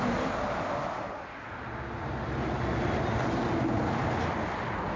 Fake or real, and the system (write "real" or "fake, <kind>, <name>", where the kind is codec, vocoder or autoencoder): real